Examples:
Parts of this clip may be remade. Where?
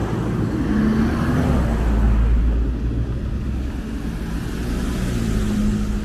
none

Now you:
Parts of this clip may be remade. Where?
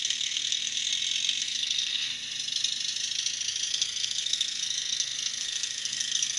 0.0-0.9; 1.4-2.1; 3.7-6.4